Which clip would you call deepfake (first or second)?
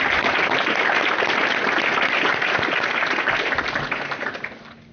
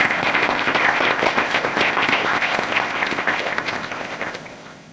second